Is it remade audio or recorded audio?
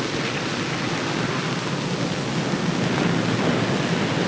recorded